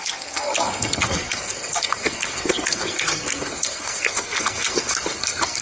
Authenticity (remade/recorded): remade